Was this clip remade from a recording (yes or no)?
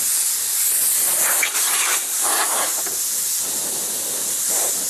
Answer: no